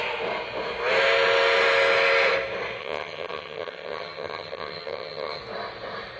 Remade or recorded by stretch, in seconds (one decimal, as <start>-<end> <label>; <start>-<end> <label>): 0.0-2.8 recorded; 2.8-5.4 remade; 5.4-6.2 recorded